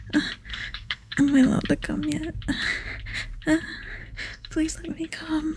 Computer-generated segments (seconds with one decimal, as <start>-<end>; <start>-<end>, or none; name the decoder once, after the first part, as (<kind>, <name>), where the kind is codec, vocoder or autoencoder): 0.5-1.2 (codec, SNAC); 4.0-4.7